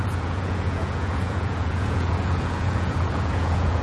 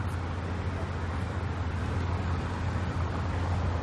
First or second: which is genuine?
second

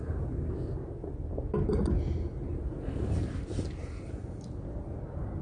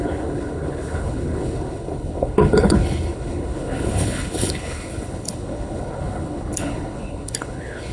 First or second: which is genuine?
first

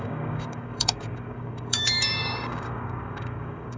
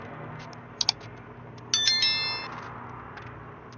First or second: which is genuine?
second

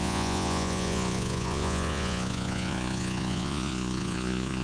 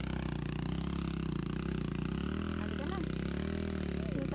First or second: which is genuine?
second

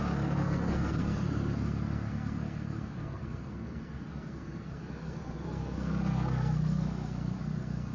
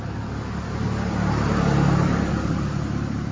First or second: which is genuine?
second